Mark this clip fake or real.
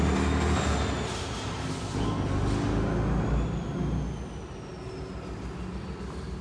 real